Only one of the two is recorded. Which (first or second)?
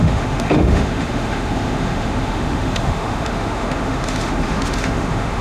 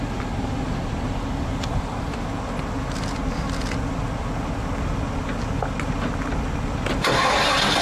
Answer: second